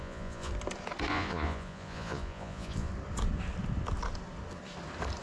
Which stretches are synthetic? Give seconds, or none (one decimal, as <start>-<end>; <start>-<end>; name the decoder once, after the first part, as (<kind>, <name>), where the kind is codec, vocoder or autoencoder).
0.0-0.5 (vocoder, Vocos); 1.1-2.9